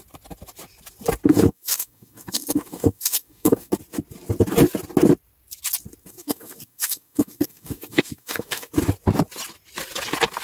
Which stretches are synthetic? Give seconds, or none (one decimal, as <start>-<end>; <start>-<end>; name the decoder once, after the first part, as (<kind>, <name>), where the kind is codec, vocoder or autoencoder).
1.3-3.7 (codec, DAC); 6.0-8.7